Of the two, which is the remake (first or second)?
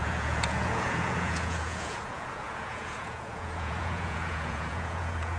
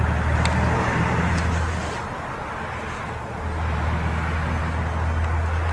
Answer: first